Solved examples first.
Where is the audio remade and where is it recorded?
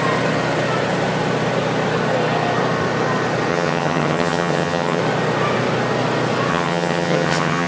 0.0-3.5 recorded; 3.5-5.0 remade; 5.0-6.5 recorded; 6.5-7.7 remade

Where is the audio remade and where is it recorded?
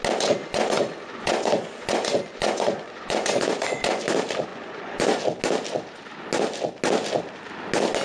0.0-0.4 recorded; 0.4-4.0 remade; 4.0-4.5 recorded; 4.5-5.2 remade; 5.2-8.0 recorded